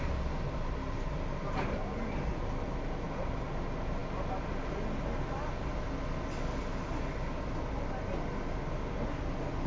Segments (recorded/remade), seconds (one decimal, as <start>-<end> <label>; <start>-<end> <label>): 0.0-9.7 recorded